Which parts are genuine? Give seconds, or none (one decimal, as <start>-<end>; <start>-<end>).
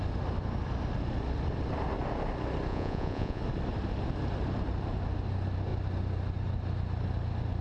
0.0-2.7; 3.4-7.6